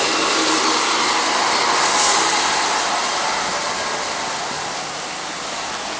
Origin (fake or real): real